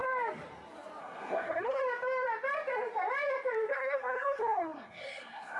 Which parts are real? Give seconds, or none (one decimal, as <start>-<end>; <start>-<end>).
0.0-1.0; 1.8-3.7